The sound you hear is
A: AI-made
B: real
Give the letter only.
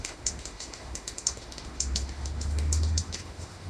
A